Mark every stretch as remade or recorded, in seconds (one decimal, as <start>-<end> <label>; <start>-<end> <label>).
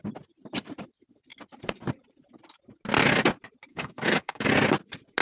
0.0-3.7 recorded; 3.7-4.5 remade; 4.5-5.2 recorded